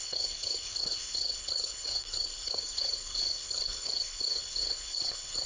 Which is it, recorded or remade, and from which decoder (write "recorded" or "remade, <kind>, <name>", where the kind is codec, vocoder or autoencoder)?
remade, codec, HILCodec